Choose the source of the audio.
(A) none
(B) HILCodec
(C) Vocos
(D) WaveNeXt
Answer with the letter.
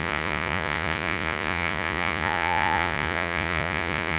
C